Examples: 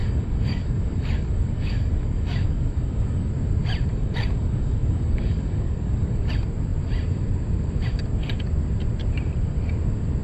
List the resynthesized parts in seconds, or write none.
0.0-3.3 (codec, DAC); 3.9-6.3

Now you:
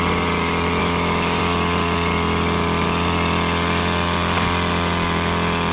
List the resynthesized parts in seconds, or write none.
0.8-1.4 (autoencoder, DAC-VAE)

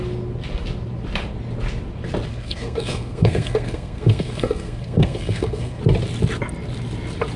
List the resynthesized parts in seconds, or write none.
2.3-5.8 (codec, SNAC)

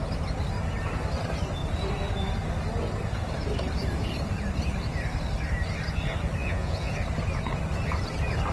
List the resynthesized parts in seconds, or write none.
6.4-6.9 (vocoder, Vocos)

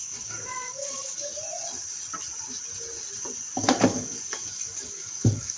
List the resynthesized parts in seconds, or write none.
0.0-1.3 (codec, DAC); 3.5-5.6